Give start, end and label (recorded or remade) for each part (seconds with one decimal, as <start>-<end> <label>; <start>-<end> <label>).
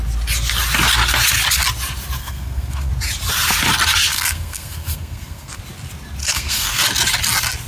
0.0-2.2 recorded; 2.2-2.9 remade; 2.9-4.1 recorded; 4.1-5.6 remade; 5.6-6.2 recorded; 6.2-6.8 remade; 6.8-7.7 recorded